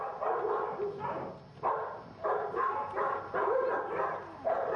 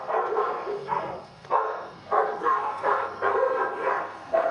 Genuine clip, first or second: first